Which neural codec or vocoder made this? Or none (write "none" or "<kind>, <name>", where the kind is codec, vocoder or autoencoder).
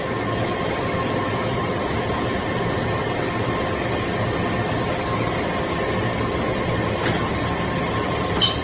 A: none